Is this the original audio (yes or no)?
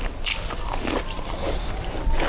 yes